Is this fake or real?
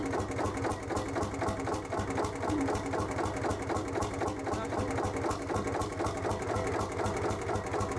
real